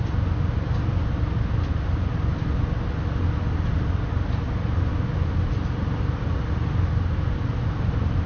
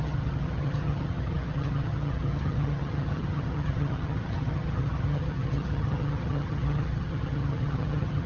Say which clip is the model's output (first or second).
second